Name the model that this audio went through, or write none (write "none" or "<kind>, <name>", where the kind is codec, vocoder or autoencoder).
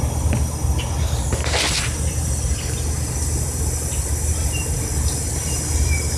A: none